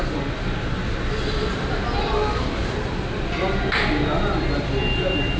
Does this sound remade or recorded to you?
recorded